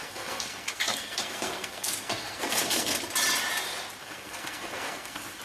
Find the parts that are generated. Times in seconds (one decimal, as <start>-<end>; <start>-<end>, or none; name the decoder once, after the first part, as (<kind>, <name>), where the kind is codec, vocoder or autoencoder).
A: 0.0-3.0 (codec, SNAC); 4.0-5.4